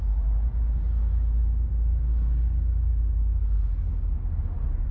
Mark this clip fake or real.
real